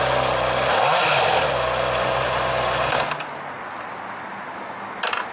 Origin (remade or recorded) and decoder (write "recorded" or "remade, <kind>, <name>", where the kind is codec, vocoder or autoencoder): recorded